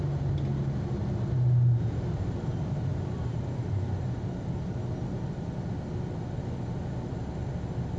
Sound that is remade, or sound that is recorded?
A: recorded